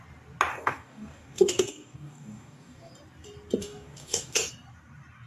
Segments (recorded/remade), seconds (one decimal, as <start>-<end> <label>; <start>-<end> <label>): 0.0-0.5 recorded; 0.5-2.9 remade; 2.9-3.6 recorded; 3.6-4.5 remade; 4.5-5.3 recorded